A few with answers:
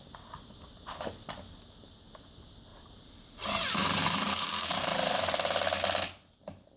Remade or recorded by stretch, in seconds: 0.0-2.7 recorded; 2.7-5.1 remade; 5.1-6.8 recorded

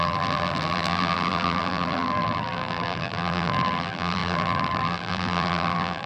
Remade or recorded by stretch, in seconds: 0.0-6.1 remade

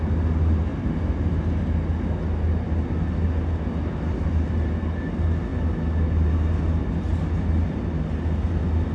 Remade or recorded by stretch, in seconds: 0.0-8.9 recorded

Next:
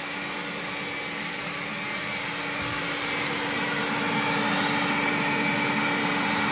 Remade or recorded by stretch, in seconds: 0.0-6.5 recorded

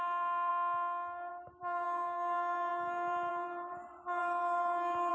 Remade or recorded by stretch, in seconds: 0.0-0.5 remade; 0.5-1.3 recorded; 1.3-5.1 remade

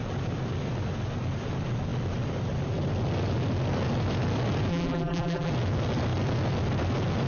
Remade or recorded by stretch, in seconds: 0.0-4.7 recorded; 4.7-5.5 remade; 5.5-7.3 recorded